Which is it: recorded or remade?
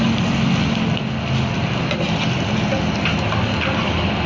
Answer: recorded